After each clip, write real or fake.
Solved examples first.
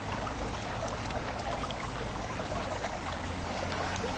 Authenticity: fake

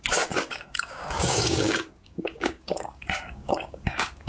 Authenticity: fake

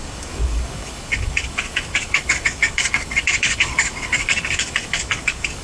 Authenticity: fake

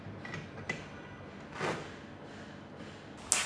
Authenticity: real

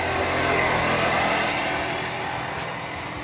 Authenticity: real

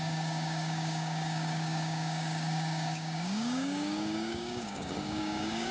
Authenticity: fake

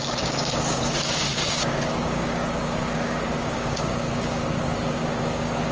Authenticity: fake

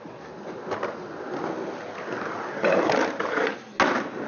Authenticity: real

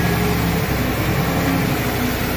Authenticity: real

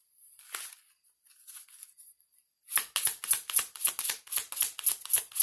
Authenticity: real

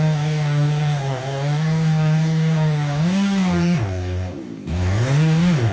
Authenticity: fake